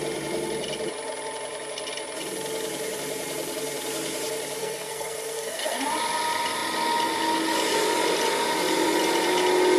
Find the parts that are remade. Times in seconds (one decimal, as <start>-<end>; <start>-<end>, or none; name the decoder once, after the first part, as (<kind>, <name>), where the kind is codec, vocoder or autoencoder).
4.6-5.8 (codec, SNAC)